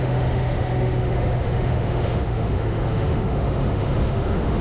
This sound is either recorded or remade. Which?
remade